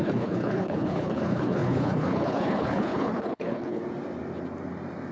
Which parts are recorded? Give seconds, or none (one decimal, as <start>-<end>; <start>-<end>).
3.8-5.1